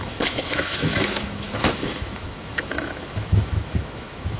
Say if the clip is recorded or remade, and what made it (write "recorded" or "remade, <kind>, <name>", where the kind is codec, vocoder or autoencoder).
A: remade, autoencoder, DAC-VAE